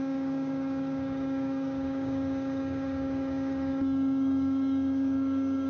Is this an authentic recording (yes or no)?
no